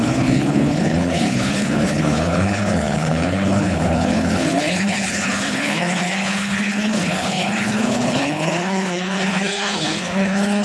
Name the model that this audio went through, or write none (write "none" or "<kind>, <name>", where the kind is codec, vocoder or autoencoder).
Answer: codec, HILCodec